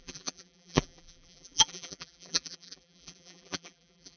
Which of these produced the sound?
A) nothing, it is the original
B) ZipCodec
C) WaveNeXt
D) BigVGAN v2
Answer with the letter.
D